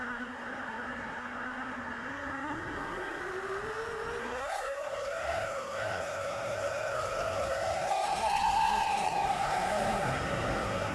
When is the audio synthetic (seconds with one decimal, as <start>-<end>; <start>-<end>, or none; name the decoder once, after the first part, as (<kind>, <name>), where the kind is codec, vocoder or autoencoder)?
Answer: 0.0-3.2 (codec, SNAC); 4.2-10.9